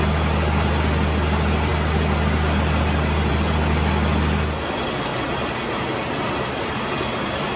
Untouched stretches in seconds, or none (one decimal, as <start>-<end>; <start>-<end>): 0.0-7.6